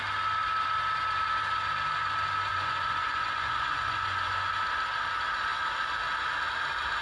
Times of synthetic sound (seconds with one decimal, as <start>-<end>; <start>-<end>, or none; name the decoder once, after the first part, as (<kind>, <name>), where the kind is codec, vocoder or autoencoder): 2.5-4.5 (vocoder, Vocos)

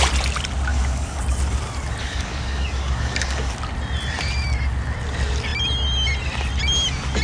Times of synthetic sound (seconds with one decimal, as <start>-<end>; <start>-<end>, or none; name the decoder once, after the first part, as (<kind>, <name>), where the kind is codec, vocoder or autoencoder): 0.7-1.2 (codec, DAC); 2.0-3.5

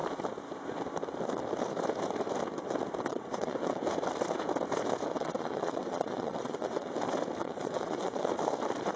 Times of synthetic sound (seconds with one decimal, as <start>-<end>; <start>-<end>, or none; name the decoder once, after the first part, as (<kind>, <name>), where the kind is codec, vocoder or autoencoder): 3.1-3.8 (vocoder, WaveNeXt); 5.1-6.9; 7.4-8.3

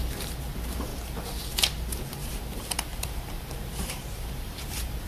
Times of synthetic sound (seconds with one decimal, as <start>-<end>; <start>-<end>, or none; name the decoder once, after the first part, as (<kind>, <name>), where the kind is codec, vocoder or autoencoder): 2.2-5.1 (vocoder, BigVGAN v2)